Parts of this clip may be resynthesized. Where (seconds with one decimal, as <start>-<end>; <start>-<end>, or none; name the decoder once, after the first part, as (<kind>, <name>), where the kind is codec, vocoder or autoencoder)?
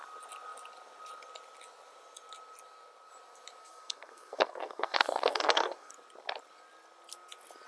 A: 3.6-5.9 (codec, SNAC)